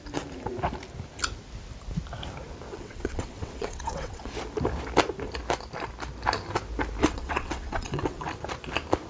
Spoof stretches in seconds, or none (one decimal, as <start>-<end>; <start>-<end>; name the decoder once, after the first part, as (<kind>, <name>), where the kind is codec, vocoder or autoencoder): 2.7-4.3 (vocoder, WaveNeXt); 7.0-8.2